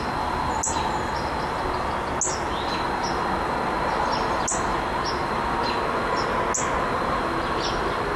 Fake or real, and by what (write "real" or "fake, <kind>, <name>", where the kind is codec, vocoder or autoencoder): real